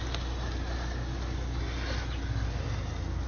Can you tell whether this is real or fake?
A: real